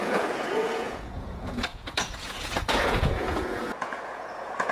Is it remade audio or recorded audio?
remade